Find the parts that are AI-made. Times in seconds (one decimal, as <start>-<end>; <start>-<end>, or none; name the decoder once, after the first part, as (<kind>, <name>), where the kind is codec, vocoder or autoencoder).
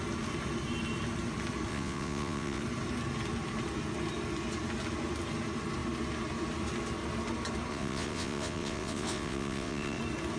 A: 1.7-2.6 (vocoder, WaveNeXt); 7.7-10.0